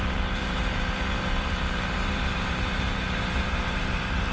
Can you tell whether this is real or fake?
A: fake